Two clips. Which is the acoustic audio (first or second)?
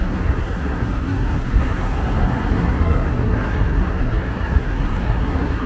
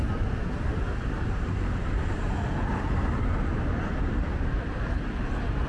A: second